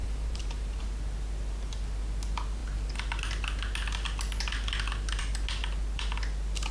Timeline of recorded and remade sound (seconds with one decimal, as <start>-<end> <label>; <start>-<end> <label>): 0.0-0.8 remade; 0.8-6.7 recorded